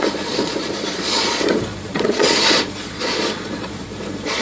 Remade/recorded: remade